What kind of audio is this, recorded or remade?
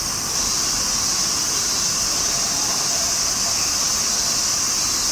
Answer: recorded